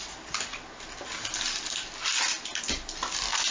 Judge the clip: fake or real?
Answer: real